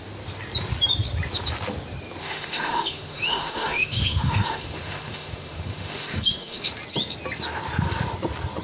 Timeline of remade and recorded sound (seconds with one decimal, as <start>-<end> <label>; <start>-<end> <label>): 0.0-2.2 recorded; 2.2-6.7 remade; 6.7-8.6 recorded